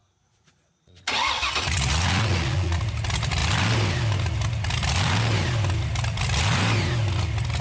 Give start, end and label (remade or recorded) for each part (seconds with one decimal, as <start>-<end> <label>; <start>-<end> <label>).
0.0-2.8 remade; 2.8-7.6 recorded